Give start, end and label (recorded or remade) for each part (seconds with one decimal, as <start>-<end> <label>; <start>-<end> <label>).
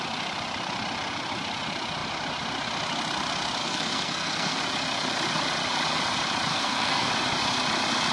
0.0-3.6 recorded; 3.6-4.6 remade; 4.6-6.5 recorded; 6.5-7.1 remade; 7.1-8.1 recorded